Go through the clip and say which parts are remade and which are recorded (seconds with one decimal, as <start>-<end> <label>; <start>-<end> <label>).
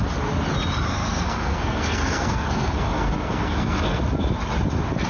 0.0-0.9 recorded; 0.9-4.0 remade; 4.0-5.1 recorded